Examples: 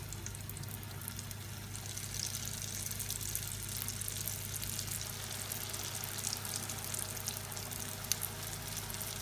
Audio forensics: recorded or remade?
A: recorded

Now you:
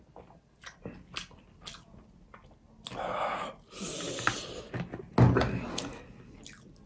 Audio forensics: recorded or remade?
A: recorded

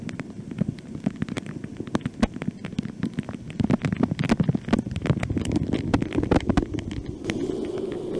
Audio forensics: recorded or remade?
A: recorded